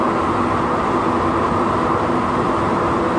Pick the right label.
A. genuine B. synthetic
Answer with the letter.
A